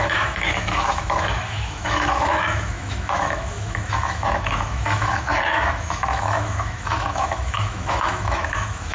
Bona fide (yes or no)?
no